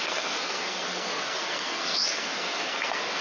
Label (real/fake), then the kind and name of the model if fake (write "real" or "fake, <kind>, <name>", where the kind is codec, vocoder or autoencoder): fake, codec, SNAC